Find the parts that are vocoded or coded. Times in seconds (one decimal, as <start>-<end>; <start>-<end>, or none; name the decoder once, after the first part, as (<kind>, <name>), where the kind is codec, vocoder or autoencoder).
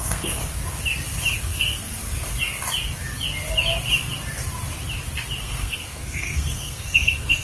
0.0-0.4 (codec, SNAC); 1.4-1.9; 5.4-7.4